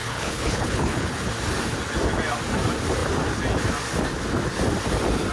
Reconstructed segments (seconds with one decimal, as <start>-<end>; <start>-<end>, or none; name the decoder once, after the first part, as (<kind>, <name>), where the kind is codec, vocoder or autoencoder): 0.0-1.3 (codec, HILCodec)